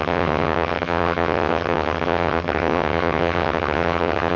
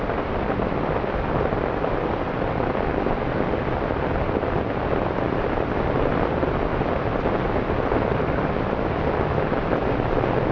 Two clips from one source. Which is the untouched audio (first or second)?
second